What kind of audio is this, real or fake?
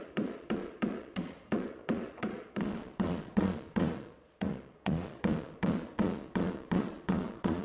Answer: fake